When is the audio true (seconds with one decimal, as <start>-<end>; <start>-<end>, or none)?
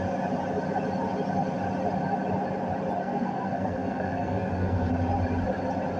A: 0.0-3.0; 4.9-6.0